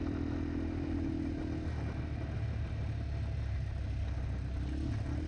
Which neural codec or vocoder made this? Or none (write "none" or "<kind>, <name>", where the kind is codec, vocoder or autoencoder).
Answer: none